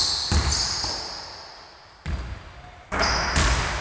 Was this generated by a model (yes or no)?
no